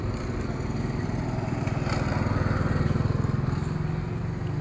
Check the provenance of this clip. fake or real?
real